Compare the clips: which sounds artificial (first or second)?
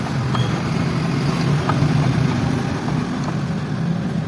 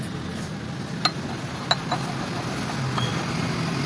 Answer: first